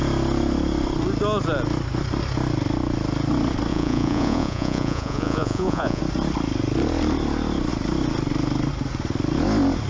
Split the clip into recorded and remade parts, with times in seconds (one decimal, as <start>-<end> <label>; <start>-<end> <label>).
0.0-3.7 recorded; 3.7-6.0 remade; 6.0-9.9 recorded